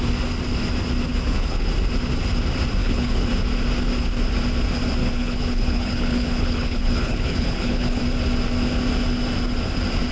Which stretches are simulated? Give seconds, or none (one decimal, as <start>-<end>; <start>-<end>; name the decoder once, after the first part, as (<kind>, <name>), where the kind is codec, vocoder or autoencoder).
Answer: 1.1-1.7 (codec, HILCodec); 2.8-3.3; 5.0-8.0